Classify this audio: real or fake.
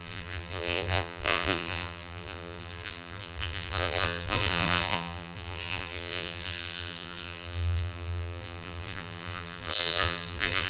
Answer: fake